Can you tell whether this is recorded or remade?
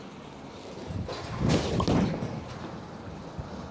recorded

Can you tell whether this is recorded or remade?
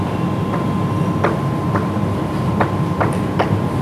recorded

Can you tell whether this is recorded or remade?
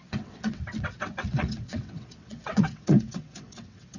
remade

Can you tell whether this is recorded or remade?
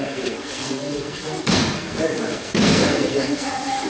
remade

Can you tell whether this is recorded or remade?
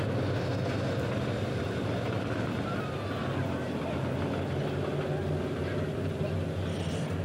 recorded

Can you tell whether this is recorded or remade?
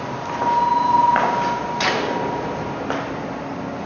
recorded